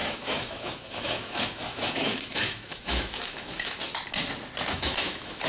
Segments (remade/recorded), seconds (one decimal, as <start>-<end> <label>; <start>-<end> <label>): 0.0-3.9 remade; 3.9-4.7 recorded; 4.7-5.5 remade